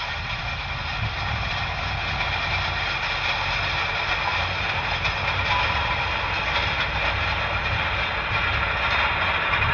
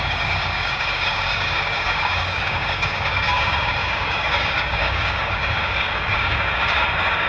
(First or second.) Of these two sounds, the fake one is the second